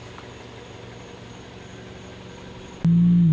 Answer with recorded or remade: recorded